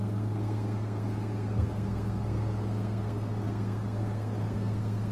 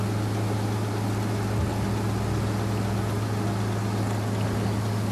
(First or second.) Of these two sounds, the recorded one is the second